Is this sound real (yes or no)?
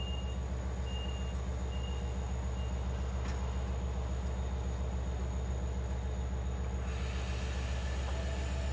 yes